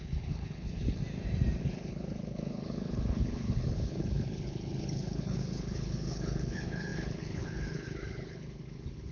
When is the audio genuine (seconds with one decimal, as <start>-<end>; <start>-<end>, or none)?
1.0-1.6